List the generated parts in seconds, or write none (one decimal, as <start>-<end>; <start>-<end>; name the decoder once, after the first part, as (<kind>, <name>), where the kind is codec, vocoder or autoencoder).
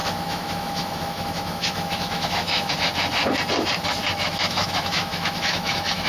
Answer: 0.0-2.7 (autoencoder, DAC-VAE); 4.0-6.1